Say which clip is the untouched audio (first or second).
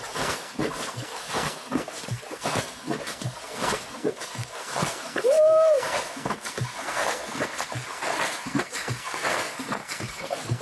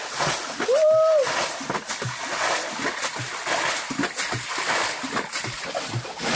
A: second